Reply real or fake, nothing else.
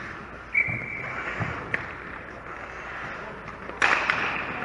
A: real